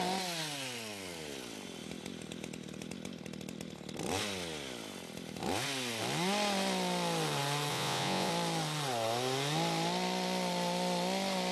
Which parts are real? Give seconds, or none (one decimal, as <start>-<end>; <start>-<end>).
0.0-7.7; 8.3-11.5